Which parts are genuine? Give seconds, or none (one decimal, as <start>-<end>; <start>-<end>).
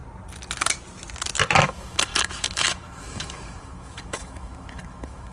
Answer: 0.0-1.6